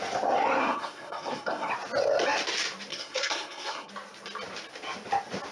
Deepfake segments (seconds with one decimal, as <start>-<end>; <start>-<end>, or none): 0.6-1.7; 2.9-3.9